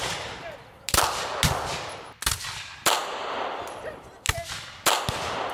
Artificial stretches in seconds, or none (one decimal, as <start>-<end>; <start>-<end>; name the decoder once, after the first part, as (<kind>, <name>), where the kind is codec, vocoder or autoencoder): none